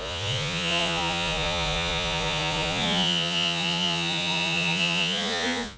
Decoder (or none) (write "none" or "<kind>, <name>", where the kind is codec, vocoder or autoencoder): vocoder, Vocos